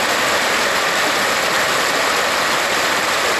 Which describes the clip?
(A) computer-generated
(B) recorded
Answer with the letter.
B